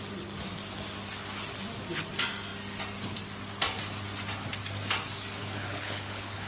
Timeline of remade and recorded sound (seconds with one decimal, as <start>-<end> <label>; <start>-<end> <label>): 0.0-5.4 recorded; 5.4-6.5 remade